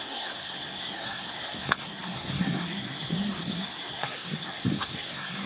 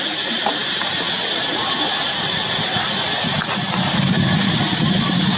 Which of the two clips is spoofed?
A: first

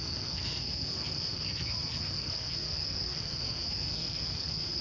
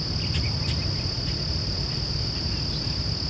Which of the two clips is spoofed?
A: first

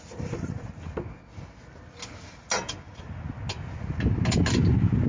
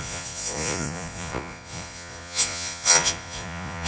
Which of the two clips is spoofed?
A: second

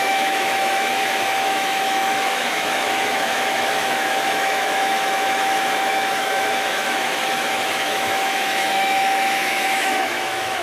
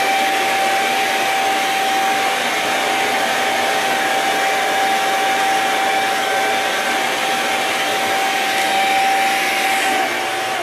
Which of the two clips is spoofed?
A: first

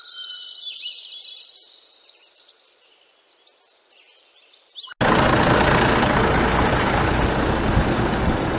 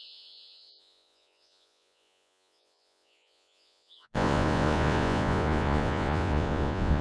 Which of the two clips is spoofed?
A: second